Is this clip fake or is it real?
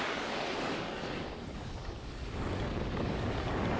fake